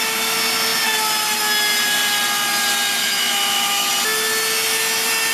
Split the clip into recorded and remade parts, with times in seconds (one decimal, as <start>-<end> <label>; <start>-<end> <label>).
0.0-3.0 recorded; 3.0-3.9 remade; 3.9-5.3 recorded